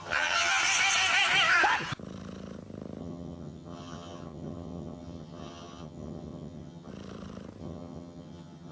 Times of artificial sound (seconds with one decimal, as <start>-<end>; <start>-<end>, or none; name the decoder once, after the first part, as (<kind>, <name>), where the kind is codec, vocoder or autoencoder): 0.0-0.6 (vocoder, HiFi-GAN); 3.0-6.9; 7.6-8.7

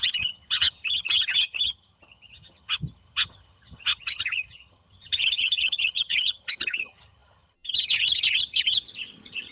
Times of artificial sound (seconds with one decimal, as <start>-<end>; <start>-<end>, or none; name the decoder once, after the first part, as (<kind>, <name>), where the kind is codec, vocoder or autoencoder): 0.0-9.5 (vocoder, HiFi-GAN)

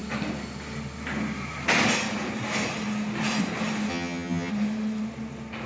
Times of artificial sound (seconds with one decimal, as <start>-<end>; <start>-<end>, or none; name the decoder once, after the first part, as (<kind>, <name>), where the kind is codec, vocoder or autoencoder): 3.9-4.5 (vocoder, HiFi-GAN)

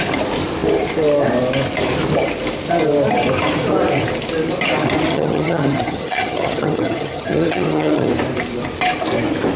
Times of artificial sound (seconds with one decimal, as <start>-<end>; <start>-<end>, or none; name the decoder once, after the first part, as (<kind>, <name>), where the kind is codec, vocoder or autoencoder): 5.1-8.1 (vocoder, HiFi-GAN)

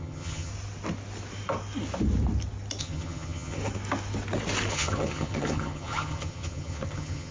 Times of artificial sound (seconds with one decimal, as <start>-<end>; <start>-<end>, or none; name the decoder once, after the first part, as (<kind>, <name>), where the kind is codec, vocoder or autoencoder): 0.0-0.5 (vocoder, HiFi-GAN); 2.8-3.6; 4.7-7.3